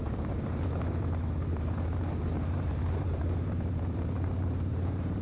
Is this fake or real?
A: fake